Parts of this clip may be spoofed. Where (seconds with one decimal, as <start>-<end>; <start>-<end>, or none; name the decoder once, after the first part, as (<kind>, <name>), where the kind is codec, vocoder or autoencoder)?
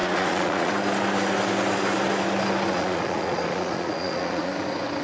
0.0-0.7 (vocoder, Vocos); 2.7-4.5